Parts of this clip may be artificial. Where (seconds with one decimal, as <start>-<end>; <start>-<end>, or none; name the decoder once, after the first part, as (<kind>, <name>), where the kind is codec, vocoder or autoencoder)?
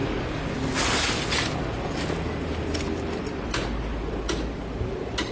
none